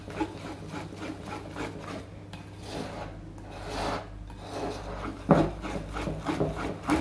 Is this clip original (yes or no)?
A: yes